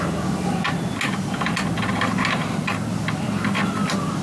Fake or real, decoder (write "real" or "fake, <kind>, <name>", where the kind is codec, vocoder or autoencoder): real